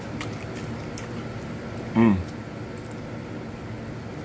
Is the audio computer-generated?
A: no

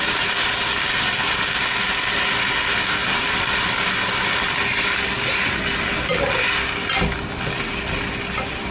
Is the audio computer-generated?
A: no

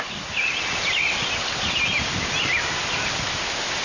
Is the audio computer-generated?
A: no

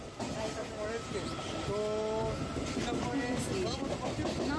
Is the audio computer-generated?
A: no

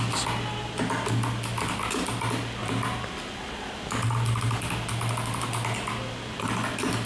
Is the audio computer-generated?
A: no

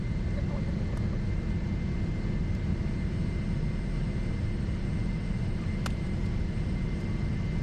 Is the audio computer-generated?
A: no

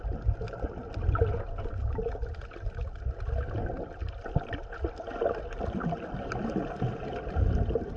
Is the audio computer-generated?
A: no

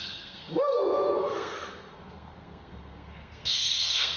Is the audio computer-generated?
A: yes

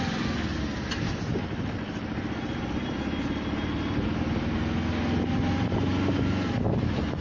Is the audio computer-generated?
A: no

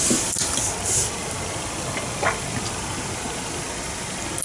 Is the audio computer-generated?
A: no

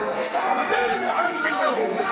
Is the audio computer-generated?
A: yes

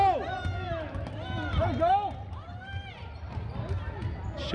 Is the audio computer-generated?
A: no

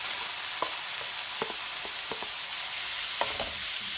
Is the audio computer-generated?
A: no